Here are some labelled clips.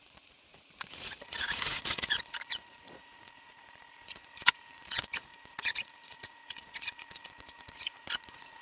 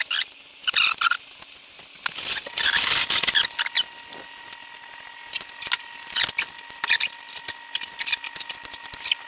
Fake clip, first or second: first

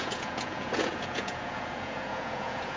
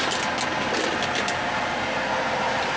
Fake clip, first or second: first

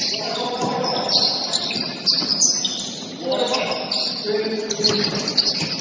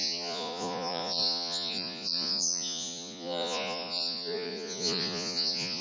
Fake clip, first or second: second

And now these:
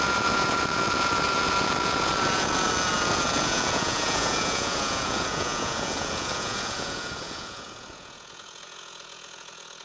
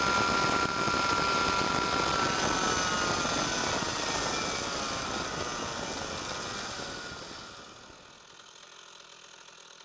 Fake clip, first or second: first